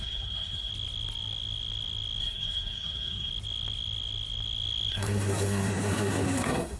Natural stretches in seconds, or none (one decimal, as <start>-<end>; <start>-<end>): 0.7-2.2; 3.3-4.9